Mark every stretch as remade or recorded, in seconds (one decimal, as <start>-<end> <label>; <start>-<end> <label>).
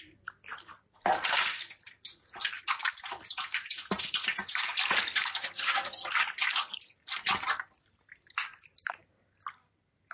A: 0.0-5.4 recorded; 5.4-6.1 remade; 6.1-10.1 recorded